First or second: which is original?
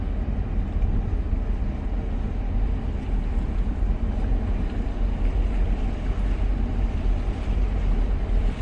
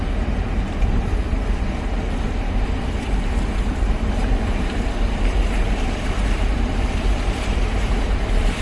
first